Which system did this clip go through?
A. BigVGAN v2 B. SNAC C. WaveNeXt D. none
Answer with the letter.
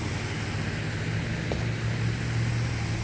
D